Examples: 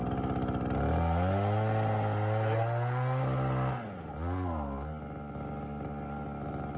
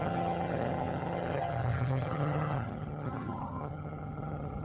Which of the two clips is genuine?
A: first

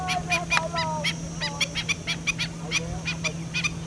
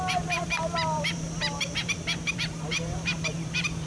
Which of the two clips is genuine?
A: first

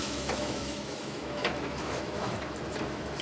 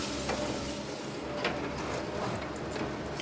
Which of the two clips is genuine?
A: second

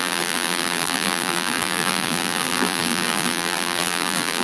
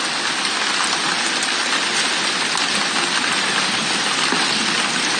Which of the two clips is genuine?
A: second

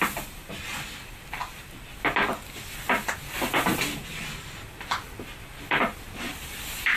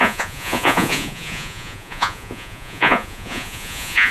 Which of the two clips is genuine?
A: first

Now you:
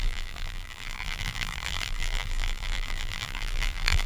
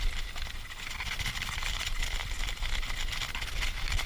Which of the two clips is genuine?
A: second